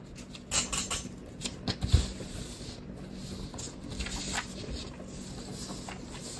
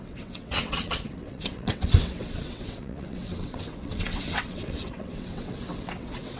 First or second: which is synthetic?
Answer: second